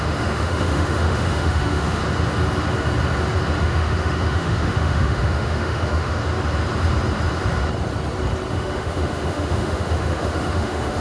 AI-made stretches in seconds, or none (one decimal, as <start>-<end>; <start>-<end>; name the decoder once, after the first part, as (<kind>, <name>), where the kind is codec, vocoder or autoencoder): 0.0-2.0 (autoencoder, DAC-VAE); 3.6-6.2; 8.5-11.0